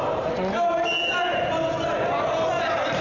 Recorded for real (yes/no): yes